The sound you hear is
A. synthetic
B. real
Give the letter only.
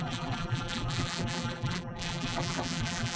A